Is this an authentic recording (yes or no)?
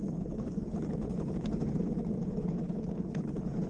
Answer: no